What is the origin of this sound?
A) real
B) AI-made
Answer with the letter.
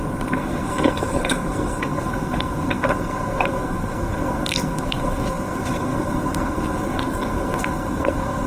B